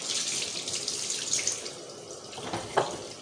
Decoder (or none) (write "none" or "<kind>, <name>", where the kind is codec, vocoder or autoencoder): none